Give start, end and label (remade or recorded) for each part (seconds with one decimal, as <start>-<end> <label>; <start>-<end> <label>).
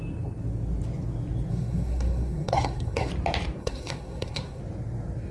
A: 0.0-1.5 recorded; 1.5-3.1 remade; 3.1-3.6 recorded; 3.6-4.6 remade; 4.6-5.3 recorded